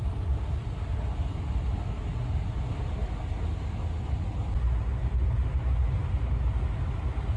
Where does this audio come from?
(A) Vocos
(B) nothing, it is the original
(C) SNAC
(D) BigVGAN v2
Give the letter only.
B